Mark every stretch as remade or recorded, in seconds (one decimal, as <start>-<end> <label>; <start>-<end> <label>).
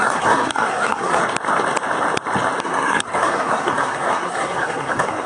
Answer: 0.0-1.2 remade; 1.2-2.6 recorded; 2.6-5.3 remade